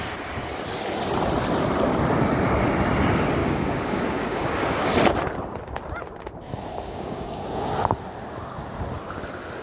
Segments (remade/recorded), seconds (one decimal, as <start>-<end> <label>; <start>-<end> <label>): 0.0-3.4 recorded; 3.4-4.9 remade; 4.9-6.7 recorded; 6.7-7.5 remade; 7.5-9.6 recorded